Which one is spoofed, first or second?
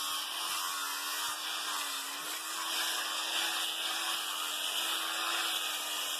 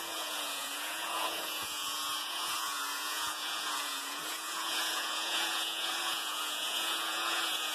second